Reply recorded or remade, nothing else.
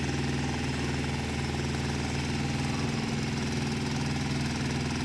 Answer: recorded